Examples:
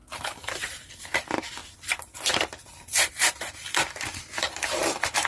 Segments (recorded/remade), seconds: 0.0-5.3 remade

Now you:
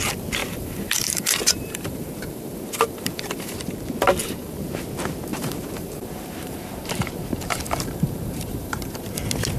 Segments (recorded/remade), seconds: 0.0-0.4 recorded; 0.4-3.6 remade; 3.6-4.2 recorded; 4.2-4.8 remade; 4.8-5.3 recorded; 5.3-9.1 remade; 9.1-9.6 recorded

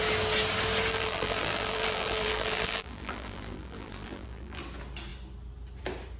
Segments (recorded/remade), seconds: 0.0-0.9 recorded; 0.9-4.6 remade; 4.6-6.2 recorded

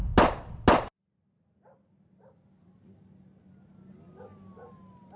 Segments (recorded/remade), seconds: 0.0-5.2 recorded

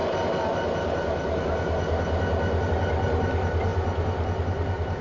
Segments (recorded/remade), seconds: 0.0-2.7 recorded; 2.7-3.7 remade; 3.7-4.4 recorded; 4.4-5.0 remade

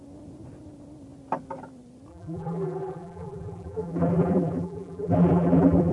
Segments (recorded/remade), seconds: 0.0-2.1 recorded; 2.1-5.9 remade